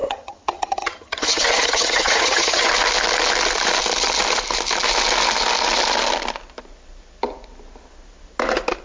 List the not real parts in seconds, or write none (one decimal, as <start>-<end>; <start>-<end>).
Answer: 0.0-2.7